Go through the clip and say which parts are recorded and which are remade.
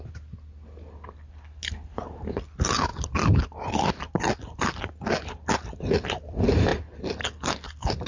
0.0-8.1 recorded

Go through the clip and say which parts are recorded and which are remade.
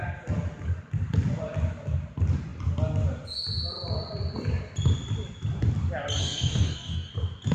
0.0-6.2 recorded; 6.2-7.1 remade; 7.1-7.5 recorded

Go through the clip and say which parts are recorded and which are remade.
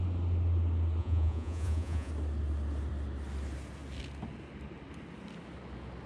0.0-1.0 recorded; 1.0-2.1 remade; 2.1-6.1 recorded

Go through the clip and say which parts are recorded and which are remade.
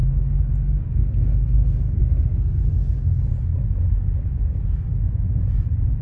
0.0-2.0 remade; 2.0-6.0 recorded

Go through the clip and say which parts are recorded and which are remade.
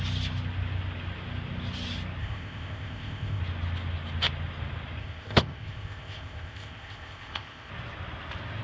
0.0-2.2 recorded; 2.2-3.4 remade; 3.4-5.0 recorded; 5.0-7.7 remade; 7.7-8.6 recorded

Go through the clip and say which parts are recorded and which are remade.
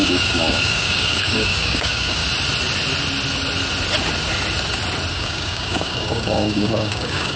0.0-2.2 remade; 2.2-5.1 recorded; 5.1-7.4 remade